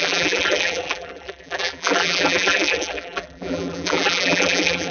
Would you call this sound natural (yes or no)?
no